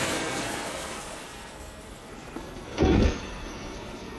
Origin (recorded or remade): remade